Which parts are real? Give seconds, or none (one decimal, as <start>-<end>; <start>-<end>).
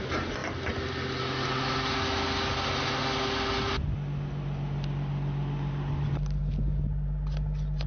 0.0-7.9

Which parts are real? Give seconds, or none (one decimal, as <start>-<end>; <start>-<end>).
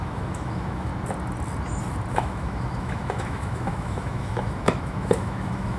0.9-2.1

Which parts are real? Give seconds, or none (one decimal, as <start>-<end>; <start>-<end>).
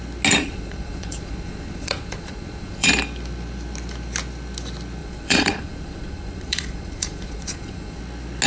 0.0-0.4; 2.9-5.0; 8.0-8.5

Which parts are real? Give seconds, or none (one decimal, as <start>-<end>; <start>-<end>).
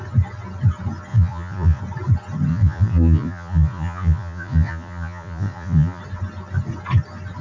0.0-1.1; 1.8-2.5; 6.0-7.4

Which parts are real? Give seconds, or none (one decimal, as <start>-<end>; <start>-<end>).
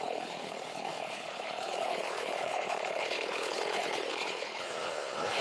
none